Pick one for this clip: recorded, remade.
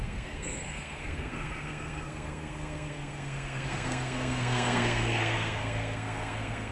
remade